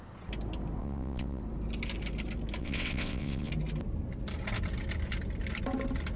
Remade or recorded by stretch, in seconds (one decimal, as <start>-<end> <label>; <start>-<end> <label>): 0.0-0.8 recorded; 0.8-1.4 remade; 1.4-2.6 recorded; 2.6-3.5 remade; 3.5-6.2 recorded